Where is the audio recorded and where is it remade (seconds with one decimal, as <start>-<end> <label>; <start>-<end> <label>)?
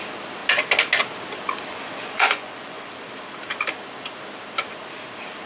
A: 0.0-1.7 recorded; 1.7-2.9 remade; 2.9-5.5 recorded